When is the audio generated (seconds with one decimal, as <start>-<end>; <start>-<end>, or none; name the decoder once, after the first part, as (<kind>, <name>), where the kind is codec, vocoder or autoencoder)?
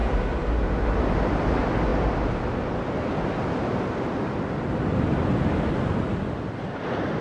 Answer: none